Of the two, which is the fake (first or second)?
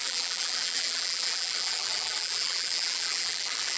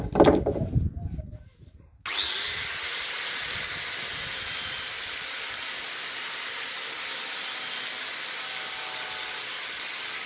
first